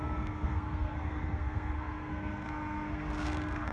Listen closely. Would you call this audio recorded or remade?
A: remade